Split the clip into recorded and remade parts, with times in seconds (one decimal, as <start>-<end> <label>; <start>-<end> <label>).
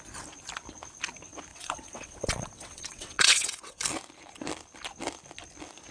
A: 0.0-1.5 recorded; 1.5-3.8 remade; 3.8-5.9 recorded